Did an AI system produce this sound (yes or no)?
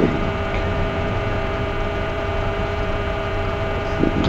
yes